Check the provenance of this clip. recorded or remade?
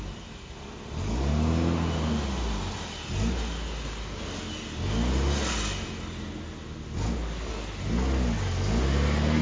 recorded